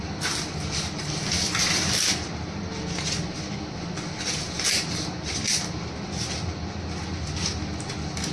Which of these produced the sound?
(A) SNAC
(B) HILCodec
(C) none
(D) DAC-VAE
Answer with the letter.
C